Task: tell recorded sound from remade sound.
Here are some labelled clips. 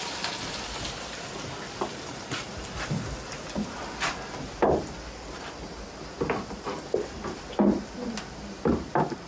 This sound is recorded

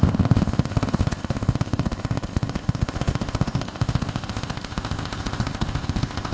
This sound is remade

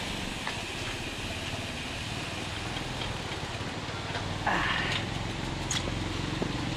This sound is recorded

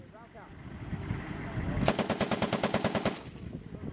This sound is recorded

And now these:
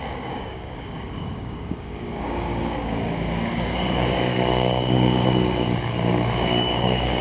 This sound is remade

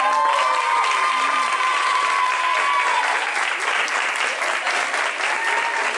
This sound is recorded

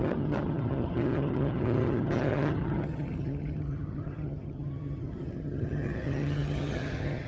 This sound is remade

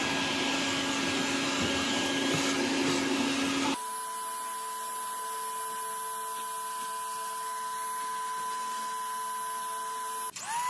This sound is recorded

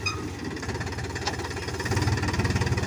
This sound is recorded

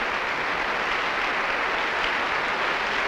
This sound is recorded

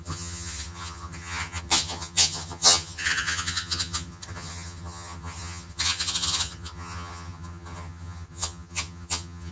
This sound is remade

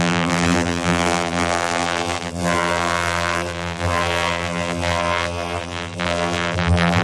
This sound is remade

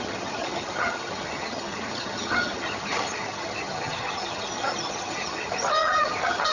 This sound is remade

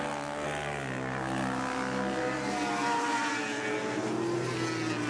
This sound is recorded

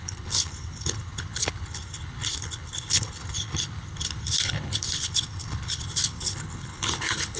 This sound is remade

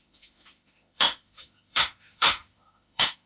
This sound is remade